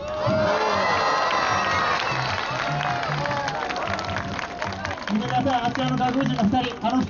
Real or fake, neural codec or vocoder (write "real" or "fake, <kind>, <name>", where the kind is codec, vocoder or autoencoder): real